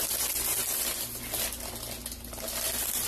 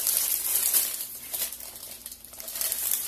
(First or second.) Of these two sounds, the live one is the first